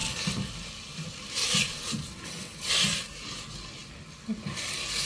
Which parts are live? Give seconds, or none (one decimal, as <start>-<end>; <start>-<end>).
0.0-1.4; 2.7-5.1